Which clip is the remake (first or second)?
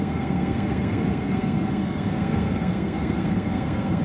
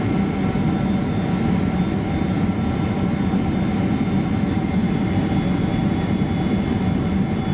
first